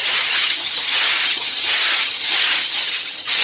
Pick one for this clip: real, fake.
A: fake